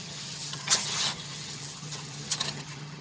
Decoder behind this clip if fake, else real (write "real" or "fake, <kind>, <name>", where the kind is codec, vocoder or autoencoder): fake, vocoder, HiFi-GAN